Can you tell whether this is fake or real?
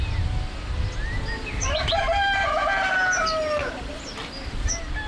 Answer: real